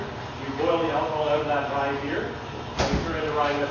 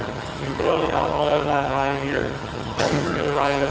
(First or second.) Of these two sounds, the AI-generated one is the second